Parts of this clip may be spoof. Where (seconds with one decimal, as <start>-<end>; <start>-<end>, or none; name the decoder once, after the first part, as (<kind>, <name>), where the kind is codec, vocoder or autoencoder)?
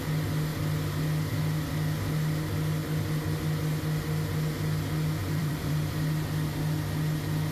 5.2-5.9 (vocoder, BigVGAN v2)